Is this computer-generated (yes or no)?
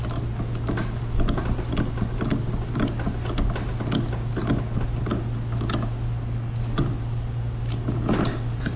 no